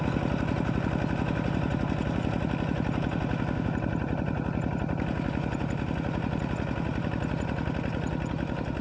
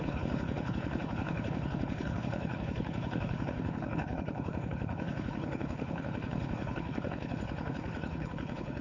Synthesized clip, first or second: second